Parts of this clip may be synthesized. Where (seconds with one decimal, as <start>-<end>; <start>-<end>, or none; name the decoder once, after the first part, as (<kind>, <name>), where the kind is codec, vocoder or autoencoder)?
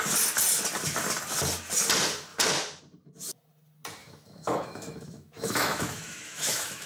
4.0-6.9 (autoencoder, DAC-VAE)